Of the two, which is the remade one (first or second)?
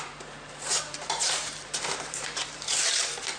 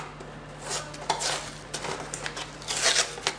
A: first